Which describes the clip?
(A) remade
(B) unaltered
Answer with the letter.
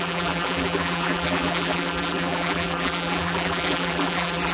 A